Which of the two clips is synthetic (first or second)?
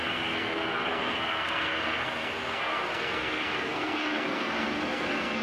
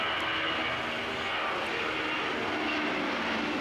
first